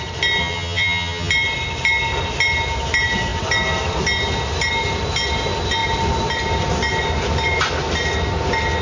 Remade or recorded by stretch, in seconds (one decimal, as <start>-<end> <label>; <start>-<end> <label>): 0.0-0.4 recorded; 0.4-1.3 remade; 1.3-8.8 recorded